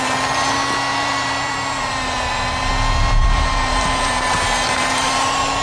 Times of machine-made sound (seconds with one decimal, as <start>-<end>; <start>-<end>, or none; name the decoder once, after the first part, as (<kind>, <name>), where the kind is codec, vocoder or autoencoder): 0.9-2.7 (vocoder, BigVGAN v2); 3.2-5.6